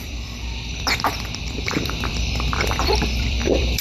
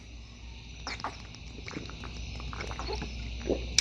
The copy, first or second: first